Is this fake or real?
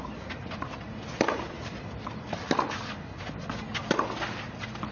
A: real